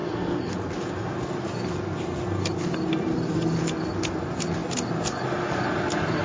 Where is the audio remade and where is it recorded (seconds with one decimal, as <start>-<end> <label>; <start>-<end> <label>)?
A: 0.0-0.5 remade; 0.5-6.2 recorded